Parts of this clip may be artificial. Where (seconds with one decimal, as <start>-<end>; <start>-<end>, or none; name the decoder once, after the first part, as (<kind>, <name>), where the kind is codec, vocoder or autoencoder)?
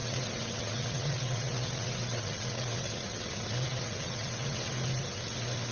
0.0-3.3 (vocoder, WaveNeXt); 3.7-4.7